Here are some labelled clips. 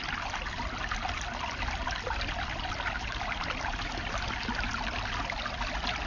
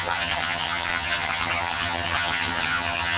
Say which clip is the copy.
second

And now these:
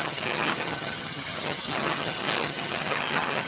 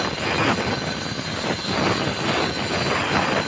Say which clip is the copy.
first